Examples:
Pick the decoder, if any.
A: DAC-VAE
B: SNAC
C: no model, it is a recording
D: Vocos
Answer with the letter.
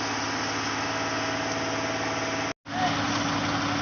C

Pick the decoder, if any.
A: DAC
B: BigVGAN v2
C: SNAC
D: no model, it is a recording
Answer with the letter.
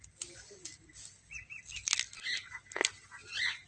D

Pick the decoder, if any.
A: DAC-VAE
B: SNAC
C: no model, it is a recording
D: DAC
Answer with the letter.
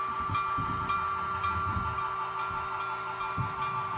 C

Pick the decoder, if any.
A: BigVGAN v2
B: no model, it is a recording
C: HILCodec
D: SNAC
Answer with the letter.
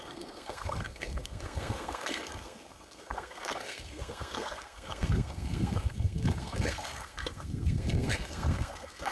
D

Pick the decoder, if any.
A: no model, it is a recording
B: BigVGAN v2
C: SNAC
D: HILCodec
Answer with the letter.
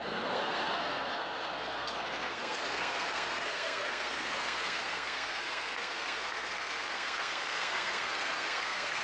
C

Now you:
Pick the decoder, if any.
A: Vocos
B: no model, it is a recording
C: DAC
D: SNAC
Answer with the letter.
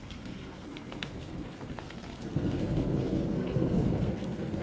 D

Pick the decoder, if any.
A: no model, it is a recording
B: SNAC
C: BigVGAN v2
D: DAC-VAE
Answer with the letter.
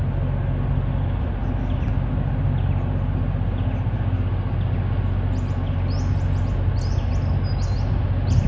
A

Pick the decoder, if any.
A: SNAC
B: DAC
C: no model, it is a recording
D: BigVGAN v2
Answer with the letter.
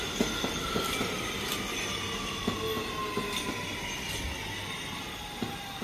C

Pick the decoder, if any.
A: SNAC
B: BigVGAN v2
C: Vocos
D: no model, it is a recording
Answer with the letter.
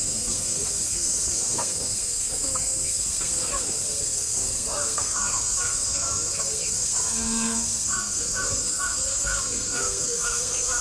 A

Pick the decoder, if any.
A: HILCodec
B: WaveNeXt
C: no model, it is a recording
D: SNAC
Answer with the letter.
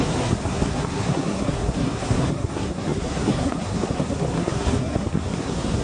D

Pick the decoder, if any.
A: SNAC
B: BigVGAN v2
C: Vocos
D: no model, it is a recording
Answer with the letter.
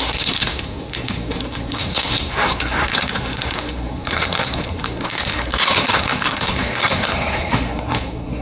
A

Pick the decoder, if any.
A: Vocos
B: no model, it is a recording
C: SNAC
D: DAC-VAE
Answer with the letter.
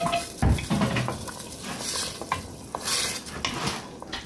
B